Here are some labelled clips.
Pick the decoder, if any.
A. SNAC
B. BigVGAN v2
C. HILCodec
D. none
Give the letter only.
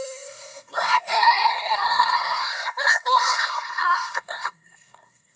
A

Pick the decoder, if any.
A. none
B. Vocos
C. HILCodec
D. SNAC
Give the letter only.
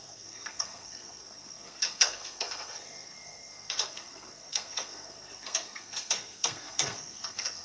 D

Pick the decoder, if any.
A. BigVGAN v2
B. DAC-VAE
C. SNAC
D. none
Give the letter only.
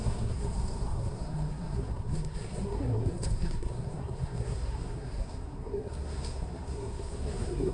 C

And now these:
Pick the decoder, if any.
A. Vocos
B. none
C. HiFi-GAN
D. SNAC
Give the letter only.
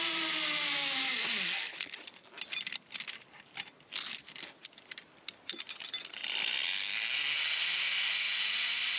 B